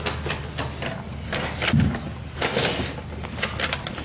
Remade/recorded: recorded